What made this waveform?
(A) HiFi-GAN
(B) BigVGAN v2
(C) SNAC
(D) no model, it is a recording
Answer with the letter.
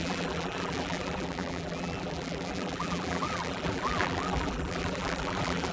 B